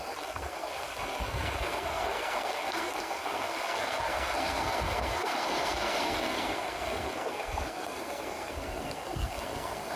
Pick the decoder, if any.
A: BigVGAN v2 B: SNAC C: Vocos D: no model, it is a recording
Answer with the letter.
B